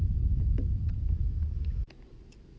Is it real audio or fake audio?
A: real